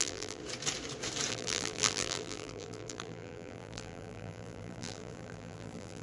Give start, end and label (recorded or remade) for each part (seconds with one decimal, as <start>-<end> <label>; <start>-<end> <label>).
0.0-0.4 remade; 0.4-1.3 recorded; 1.3-6.0 remade